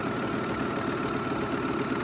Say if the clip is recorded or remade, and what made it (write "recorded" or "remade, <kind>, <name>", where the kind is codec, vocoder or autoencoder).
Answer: recorded